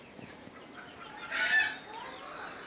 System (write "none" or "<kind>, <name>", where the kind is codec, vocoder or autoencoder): none